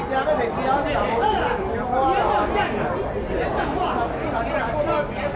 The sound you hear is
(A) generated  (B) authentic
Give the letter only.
B